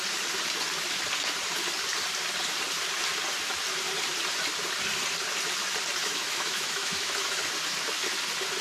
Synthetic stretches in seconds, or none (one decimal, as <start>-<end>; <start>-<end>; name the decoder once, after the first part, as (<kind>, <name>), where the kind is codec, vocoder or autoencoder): 6.0-7.4 (autoencoder, DAC-VAE)